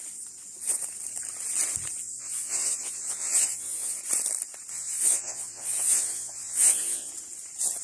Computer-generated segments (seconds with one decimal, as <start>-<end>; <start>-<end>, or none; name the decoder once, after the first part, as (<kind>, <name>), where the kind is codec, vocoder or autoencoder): 2.0-4.0 (vocoder, Vocos); 4.7-7.1